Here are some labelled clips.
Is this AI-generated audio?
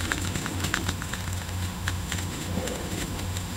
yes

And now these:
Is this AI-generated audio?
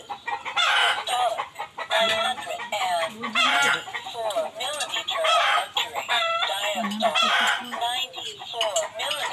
no